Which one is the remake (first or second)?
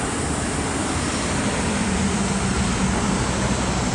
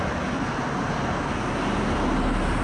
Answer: first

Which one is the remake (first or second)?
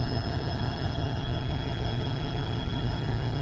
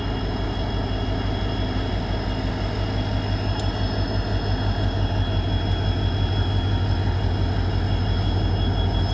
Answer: first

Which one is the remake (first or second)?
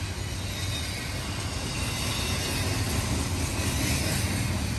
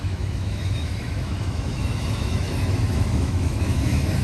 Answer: second